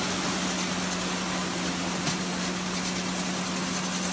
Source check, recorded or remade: recorded